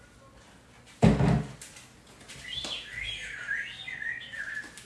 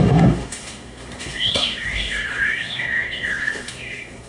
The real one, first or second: first